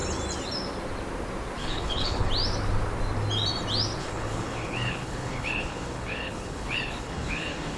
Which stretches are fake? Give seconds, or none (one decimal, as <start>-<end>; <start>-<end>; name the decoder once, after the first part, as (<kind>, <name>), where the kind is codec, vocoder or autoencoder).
1.6-2.3 (codec, HILCodec); 4.0-7.8